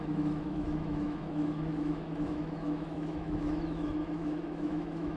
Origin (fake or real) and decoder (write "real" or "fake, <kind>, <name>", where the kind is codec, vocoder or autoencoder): fake, autoencoder, DAC-VAE